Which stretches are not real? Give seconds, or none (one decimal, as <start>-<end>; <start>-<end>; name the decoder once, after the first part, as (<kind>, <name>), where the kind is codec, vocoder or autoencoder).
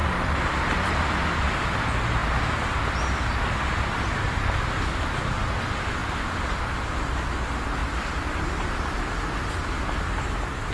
0.0-0.9 (vocoder, BigVGAN v2); 6.0-6.6; 7.8-9.1